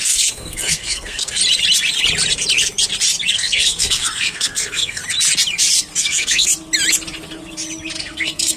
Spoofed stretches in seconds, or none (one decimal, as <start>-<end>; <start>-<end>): 0.0-1.4; 3.3-5.0; 6.0-6.5; 8.0-8.6